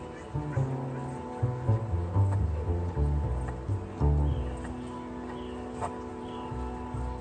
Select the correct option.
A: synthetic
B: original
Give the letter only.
B